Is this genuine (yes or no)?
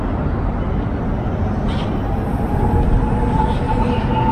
yes